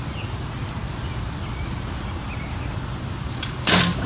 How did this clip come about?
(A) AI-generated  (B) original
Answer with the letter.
B